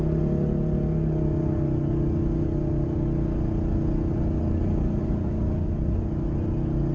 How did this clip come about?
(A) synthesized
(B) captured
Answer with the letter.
B